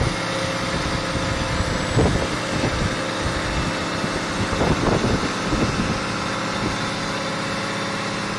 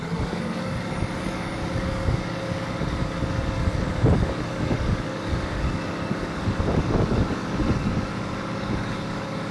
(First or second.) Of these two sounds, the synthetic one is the second